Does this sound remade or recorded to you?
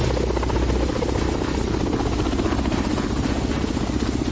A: recorded